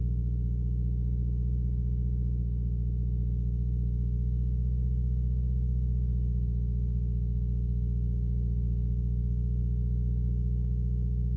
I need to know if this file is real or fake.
real